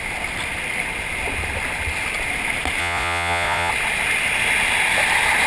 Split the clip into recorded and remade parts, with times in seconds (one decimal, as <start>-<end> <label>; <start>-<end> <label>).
0.0-2.8 recorded; 2.8-3.7 remade; 3.7-5.5 recorded